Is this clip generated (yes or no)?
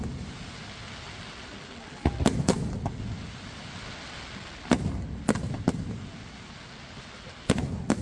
no